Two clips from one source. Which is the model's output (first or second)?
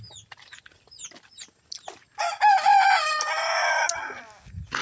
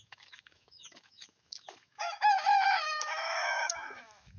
second